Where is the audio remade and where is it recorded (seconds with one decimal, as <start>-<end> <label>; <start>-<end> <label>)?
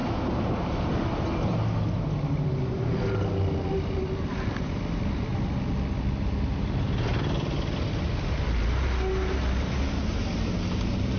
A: 0.0-11.2 recorded